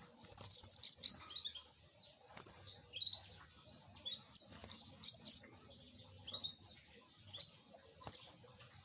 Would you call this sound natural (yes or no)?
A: yes